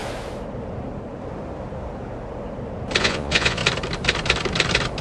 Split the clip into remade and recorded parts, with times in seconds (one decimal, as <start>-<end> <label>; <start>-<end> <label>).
0.0-3.0 recorded; 3.0-3.6 remade; 3.6-5.0 recorded